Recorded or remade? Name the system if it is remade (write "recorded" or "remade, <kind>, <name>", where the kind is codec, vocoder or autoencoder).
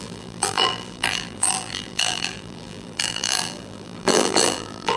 remade, vocoder, BigVGAN v2